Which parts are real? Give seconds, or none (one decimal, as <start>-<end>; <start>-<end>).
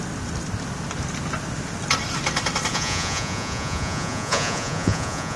0.0-2.7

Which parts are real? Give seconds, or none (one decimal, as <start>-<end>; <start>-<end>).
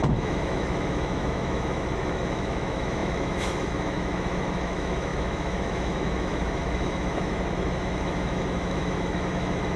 none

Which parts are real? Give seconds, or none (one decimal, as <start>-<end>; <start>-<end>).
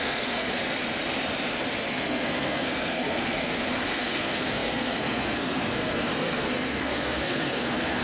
0.6-1.9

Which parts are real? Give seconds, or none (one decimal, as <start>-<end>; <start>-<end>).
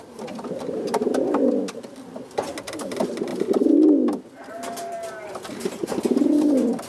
0.0-6.9